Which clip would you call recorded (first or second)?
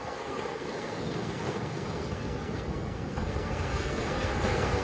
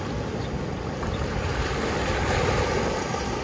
second